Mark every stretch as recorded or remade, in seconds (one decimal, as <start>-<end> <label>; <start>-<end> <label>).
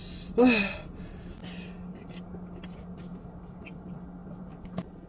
0.0-5.1 recorded